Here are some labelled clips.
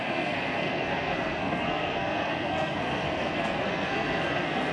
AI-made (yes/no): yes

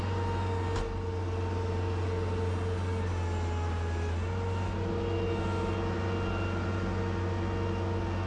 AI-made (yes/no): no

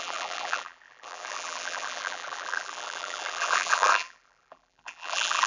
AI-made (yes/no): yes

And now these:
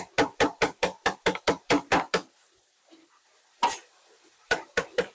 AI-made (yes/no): yes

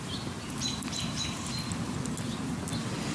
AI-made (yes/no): no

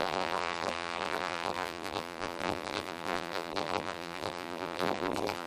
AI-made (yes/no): yes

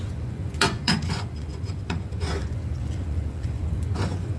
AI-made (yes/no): yes